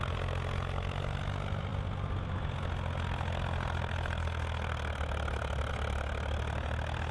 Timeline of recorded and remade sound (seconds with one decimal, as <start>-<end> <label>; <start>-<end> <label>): 0.0-7.1 recorded